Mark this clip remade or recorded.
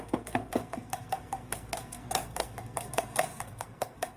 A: remade